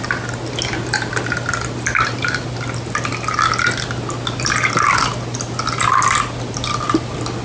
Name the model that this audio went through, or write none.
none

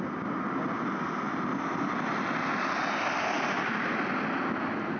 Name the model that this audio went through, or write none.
none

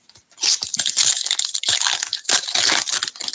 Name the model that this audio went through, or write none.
none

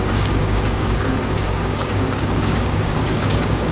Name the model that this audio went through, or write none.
codec, DAC